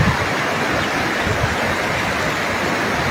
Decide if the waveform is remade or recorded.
recorded